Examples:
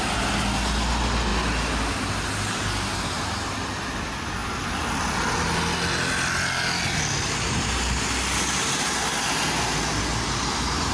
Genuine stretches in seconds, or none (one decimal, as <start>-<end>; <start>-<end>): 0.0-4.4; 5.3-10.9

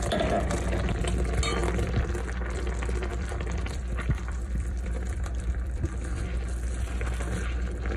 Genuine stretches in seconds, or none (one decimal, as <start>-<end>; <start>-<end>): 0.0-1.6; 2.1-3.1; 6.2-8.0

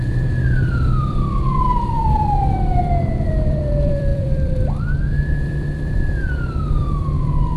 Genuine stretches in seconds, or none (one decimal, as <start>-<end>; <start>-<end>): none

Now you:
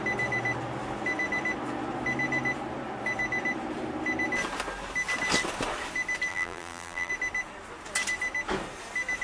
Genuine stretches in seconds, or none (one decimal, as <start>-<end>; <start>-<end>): 0.0-6.3; 7.1-9.2

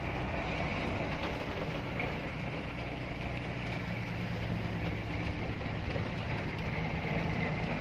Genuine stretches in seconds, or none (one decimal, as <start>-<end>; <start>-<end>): 0.0-5.0

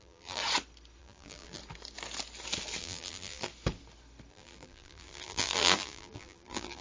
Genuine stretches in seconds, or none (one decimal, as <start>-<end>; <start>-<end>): 0.4-1.0; 1.6-2.8; 3.5-4.3

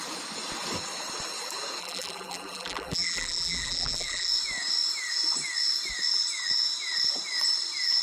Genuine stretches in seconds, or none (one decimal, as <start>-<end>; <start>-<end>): 0.0-1.8; 4.3-8.0